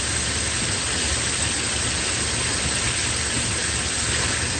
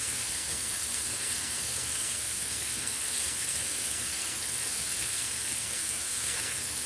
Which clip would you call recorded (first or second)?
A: first